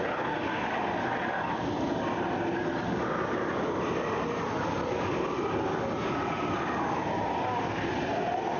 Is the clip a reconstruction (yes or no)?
no